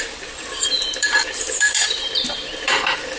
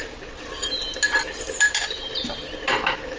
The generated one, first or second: first